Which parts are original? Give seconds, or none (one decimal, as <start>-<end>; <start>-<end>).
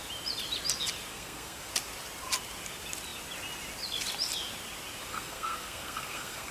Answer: 0.0-1.1; 1.7-5.1